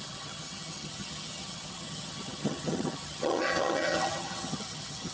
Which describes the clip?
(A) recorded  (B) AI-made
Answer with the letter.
B